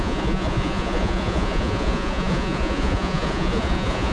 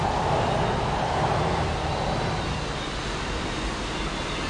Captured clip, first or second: second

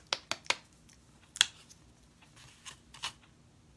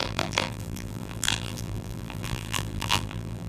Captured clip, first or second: first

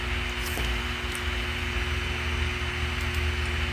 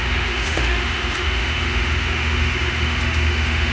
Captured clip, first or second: first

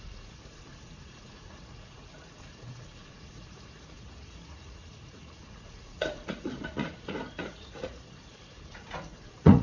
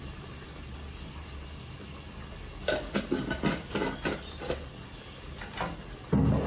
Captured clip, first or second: second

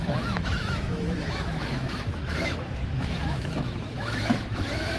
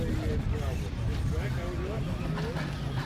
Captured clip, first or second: second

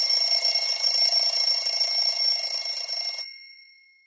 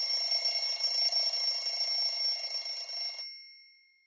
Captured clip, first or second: second